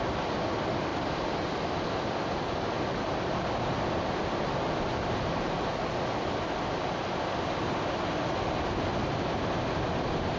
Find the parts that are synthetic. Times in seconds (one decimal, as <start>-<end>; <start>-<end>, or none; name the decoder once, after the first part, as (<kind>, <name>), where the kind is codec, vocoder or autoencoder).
none